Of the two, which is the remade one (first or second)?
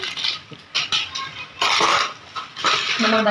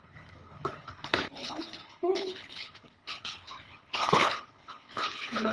second